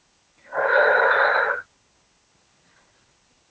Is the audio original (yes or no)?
yes